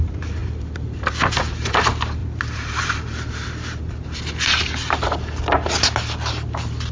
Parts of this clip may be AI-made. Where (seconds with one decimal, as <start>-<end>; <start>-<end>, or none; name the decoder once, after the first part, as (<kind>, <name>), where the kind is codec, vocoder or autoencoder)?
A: 0.4-1.8 (vocoder, BigVGAN v2); 2.2-3.8